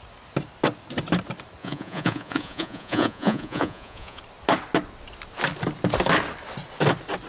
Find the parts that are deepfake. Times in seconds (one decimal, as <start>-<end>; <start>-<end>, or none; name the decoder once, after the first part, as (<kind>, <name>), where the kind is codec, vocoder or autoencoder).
1.6-4.2 (vocoder, Vocos)